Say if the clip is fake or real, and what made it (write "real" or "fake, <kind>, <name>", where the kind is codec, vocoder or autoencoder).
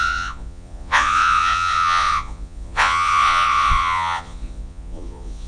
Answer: fake, vocoder, Vocos